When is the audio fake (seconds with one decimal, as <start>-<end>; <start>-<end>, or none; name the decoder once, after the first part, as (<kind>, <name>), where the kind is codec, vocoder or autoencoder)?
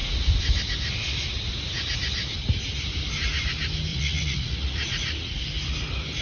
3.9-5.4 (vocoder, Vocos)